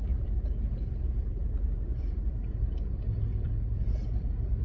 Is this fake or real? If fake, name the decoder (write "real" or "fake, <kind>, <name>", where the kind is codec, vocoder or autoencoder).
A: fake, vocoder, BigVGAN v2